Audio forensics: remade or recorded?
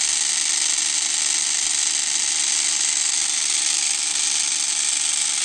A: recorded